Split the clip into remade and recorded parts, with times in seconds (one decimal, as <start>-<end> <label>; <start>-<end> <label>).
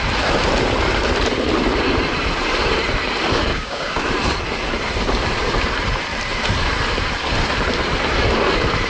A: 0.0-3.5 recorded; 3.5-4.0 remade; 4.0-8.9 recorded